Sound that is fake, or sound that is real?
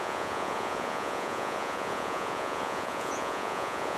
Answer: fake